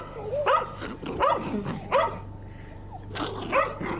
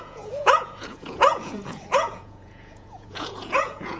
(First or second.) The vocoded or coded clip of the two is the second